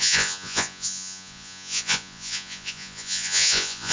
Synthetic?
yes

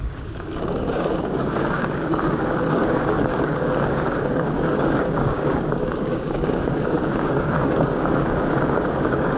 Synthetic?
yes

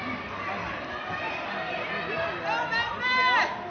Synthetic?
no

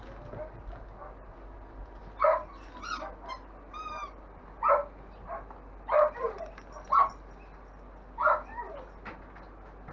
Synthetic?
no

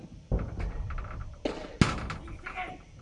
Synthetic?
no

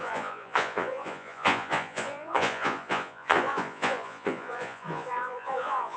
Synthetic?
yes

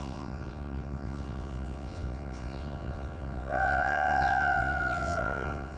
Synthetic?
yes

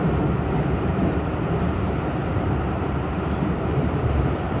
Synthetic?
yes